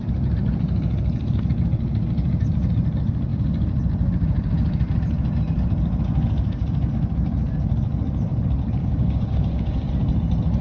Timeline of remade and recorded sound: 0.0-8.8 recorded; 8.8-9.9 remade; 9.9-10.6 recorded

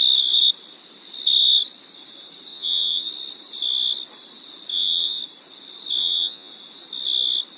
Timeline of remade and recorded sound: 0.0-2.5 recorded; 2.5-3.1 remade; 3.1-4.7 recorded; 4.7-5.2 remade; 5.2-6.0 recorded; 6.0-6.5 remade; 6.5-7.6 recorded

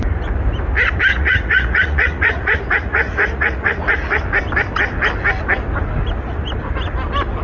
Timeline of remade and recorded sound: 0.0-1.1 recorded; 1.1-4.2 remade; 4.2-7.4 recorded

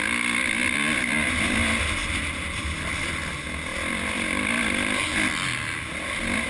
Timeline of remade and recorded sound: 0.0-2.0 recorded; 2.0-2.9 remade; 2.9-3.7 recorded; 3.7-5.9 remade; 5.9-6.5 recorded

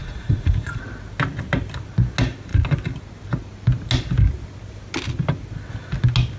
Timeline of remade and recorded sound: 0.0-0.8 remade; 0.8-6.4 recorded

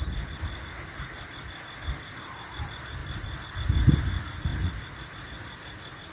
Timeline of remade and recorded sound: 0.0-3.0 recorded; 3.0-3.5 remade; 3.5-6.1 recorded

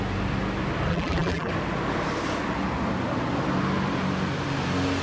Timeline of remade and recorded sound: 0.0-0.9 recorded; 0.9-1.5 remade; 1.5-5.0 recorded